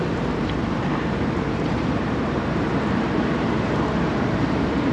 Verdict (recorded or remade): remade